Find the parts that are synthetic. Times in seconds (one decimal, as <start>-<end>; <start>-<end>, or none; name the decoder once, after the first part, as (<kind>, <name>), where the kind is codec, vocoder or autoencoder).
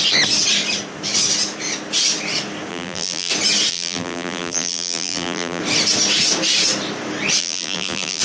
2.7-3.3 (vocoder, BigVGAN v2); 3.7-5.6; 7.4-8.2